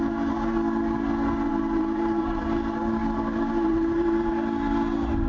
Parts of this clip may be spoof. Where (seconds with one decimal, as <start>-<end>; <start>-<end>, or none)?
1.5-4.3